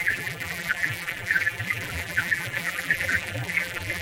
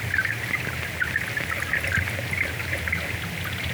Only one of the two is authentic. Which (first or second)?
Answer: second